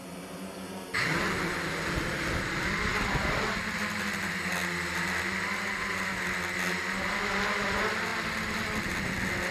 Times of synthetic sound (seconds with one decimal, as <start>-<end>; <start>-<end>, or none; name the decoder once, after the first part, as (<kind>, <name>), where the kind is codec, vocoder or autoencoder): none